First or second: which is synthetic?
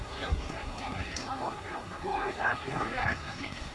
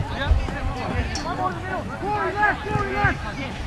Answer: first